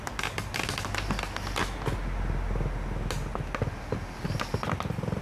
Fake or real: real